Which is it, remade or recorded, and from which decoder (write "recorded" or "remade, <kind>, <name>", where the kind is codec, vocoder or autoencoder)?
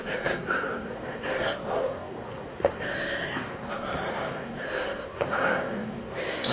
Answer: remade, codec, SNAC